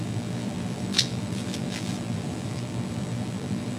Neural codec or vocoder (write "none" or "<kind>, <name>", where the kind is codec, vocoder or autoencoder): vocoder, BigVGAN v2